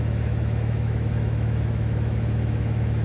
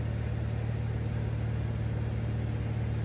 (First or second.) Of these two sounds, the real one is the second